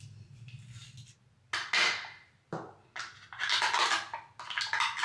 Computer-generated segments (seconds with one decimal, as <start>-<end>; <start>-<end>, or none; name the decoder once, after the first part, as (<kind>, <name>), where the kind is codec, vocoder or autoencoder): none